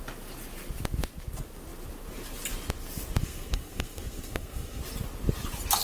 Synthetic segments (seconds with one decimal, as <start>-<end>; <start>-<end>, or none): 3.2-4.8